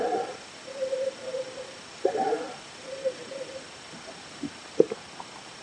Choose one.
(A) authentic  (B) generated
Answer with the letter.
A